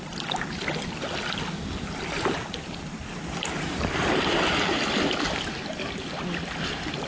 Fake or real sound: real